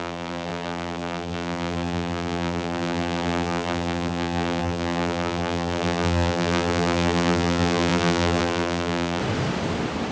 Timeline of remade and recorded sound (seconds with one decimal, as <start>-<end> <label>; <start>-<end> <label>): 0.0-9.2 remade; 9.2-10.1 recorded